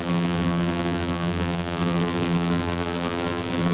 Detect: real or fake fake